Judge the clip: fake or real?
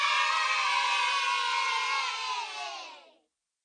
real